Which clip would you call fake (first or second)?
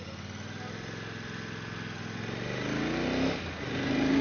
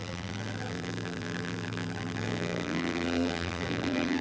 second